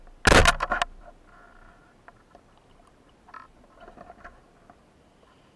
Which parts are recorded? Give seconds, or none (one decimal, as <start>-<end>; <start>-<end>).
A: 0.0-5.6